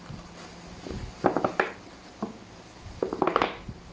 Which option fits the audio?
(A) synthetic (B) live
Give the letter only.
B